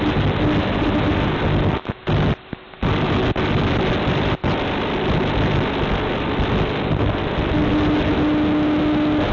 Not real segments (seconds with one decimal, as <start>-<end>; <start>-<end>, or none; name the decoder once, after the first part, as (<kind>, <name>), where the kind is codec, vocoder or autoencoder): none